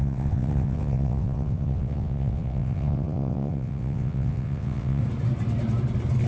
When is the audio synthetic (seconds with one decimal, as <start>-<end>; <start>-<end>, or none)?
0.0-5.0